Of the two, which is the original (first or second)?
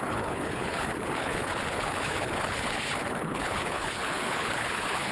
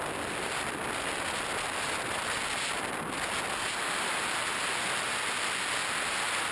second